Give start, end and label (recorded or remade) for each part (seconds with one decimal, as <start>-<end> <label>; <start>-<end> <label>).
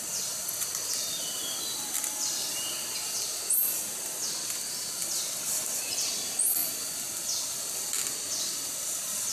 0.0-9.3 recorded